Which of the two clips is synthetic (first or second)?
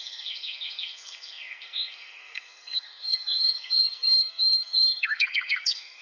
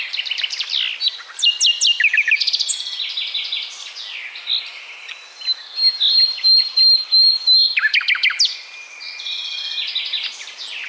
first